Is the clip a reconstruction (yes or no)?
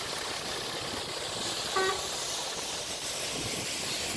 no